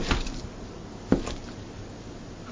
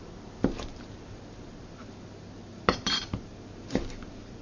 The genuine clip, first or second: first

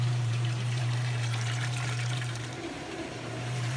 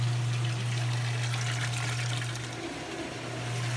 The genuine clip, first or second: second